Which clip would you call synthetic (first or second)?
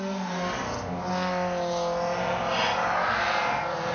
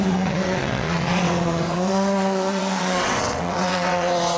second